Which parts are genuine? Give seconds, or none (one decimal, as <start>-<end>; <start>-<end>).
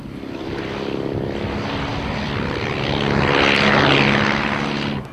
0.0-5.1